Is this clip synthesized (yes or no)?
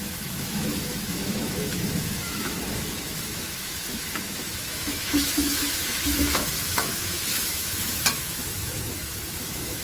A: yes